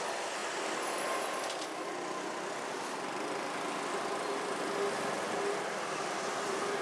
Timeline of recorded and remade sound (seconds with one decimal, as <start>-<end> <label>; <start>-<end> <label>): 0.0-6.8 recorded